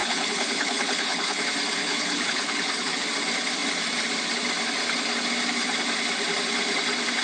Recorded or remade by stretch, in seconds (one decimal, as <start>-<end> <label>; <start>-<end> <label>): 0.0-1.4 remade; 1.4-1.8 recorded; 1.8-3.1 remade; 3.1-7.2 recorded